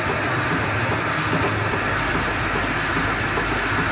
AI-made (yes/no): no